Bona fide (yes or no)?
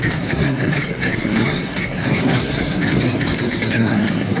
no